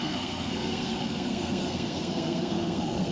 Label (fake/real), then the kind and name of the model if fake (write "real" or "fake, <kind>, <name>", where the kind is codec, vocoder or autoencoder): fake, codec, SNAC